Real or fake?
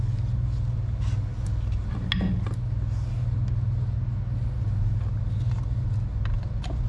real